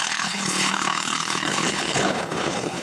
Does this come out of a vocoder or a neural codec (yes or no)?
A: yes